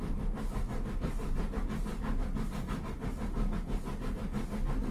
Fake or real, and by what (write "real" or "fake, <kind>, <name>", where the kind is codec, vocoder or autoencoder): real